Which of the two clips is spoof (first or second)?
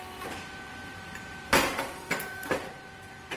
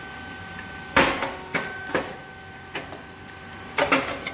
first